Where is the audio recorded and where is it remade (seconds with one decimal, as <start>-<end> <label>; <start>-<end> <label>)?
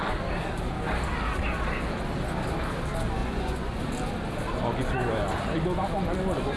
0.0-3.2 recorded; 3.2-3.8 remade; 3.8-6.6 recorded